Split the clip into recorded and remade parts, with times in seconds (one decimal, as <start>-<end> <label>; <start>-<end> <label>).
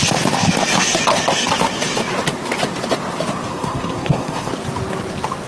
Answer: 0.0-3.5 recorded; 3.5-4.5 remade; 4.5-5.5 recorded